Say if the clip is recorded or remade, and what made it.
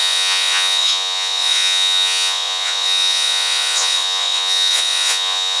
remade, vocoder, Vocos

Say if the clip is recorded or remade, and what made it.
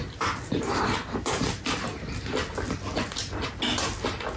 recorded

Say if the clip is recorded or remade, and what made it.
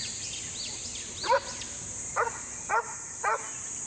recorded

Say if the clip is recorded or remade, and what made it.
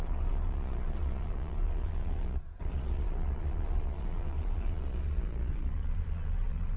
remade, vocoder, Vocos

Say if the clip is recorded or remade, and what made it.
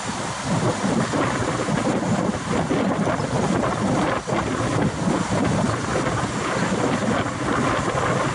recorded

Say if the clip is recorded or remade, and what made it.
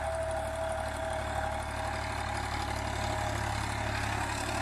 recorded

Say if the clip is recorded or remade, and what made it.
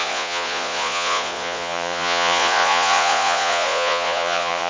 remade, vocoder, Vocos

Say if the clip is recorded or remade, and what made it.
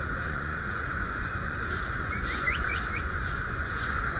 remade, vocoder, Vocos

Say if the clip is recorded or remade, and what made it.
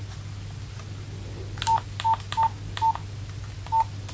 recorded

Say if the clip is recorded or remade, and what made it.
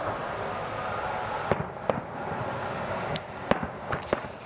recorded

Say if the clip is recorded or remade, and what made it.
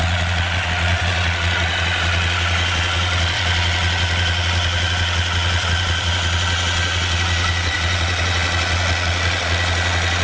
remade, vocoder, Vocos